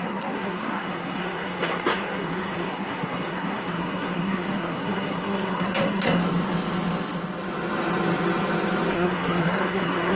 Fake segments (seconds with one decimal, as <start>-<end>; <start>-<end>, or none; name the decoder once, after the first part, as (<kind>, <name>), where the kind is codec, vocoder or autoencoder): 0.0-6.2 (codec, SNAC); 8.9-10.2